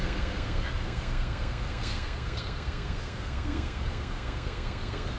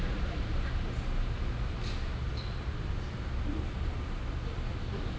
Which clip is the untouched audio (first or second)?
second